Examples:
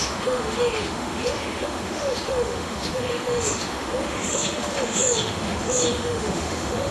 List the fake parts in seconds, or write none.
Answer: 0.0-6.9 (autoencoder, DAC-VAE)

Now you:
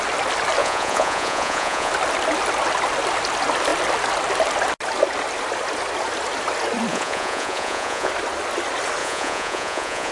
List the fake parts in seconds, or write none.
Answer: 0.6-1.9 (vocoder, Vocos); 6.9-8.1; 9.0-10.1

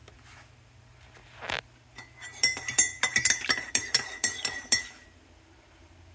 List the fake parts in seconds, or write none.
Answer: none

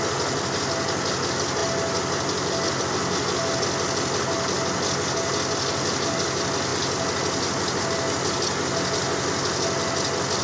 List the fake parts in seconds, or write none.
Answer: none

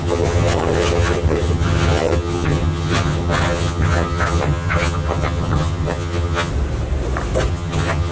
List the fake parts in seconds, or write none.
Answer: 0.0-6.5 (vocoder, HiFi-GAN); 7.5-8.1